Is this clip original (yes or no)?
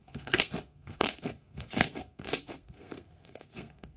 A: no